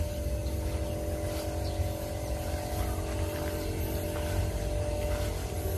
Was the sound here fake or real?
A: real